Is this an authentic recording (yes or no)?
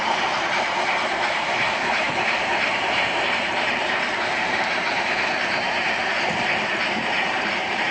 no